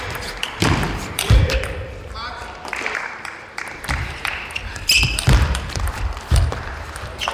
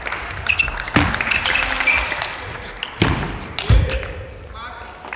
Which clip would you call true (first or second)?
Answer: second